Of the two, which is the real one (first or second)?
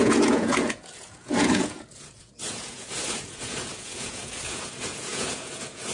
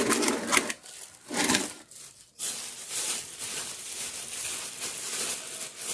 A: second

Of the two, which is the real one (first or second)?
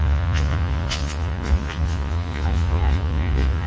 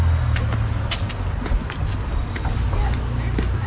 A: second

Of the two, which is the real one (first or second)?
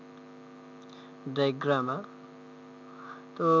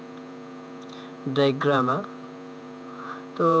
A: first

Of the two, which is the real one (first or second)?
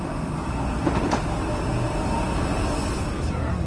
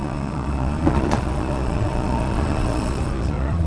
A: first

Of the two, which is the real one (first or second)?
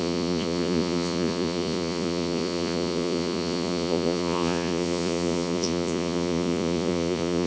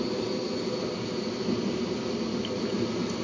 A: second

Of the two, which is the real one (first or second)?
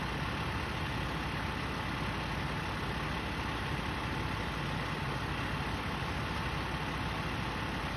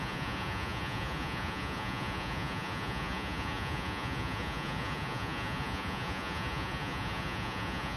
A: first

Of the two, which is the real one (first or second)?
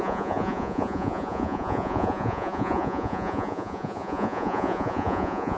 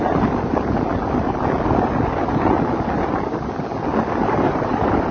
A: second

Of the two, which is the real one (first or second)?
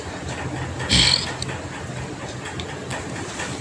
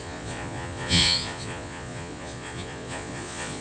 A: first